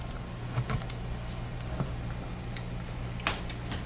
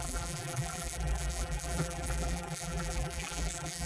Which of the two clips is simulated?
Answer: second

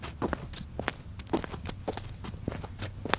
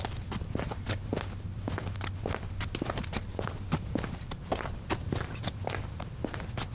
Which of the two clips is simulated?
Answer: second